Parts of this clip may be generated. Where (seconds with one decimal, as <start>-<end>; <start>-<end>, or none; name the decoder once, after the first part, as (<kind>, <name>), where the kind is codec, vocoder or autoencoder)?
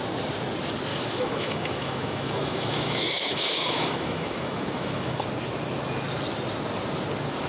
0.9-5.2 (autoencoder, DAC-VAE)